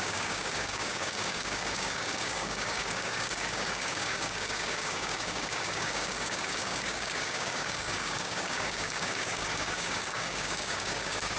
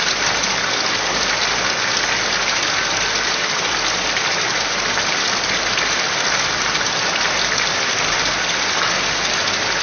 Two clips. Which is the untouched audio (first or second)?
second